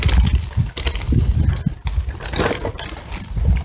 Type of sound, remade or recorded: recorded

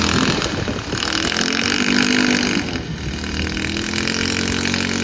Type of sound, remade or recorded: recorded